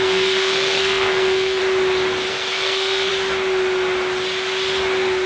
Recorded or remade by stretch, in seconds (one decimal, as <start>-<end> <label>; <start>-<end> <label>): 0.0-1.6 remade; 1.6-2.3 recorded; 2.3-3.1 remade; 3.1-5.3 recorded